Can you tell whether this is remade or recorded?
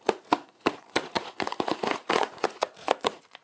remade